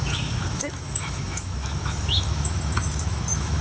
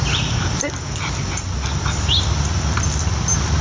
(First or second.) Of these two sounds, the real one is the second